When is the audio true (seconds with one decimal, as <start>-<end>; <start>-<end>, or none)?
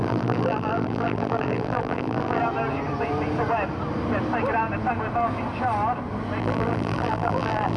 2.4-6.4